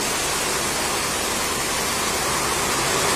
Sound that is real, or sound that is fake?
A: real